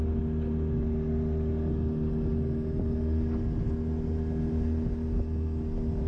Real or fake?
real